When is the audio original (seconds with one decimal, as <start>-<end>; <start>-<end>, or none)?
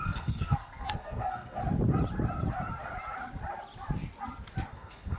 1.6-4.7